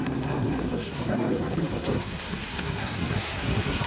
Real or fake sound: fake